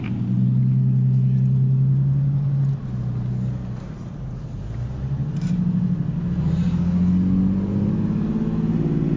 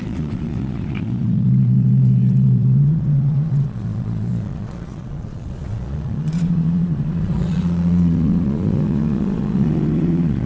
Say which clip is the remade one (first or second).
second